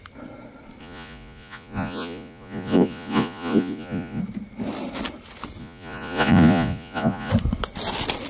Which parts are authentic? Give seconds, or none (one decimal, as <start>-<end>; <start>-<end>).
0.0-0.8; 4.2-5.6; 7.3-8.3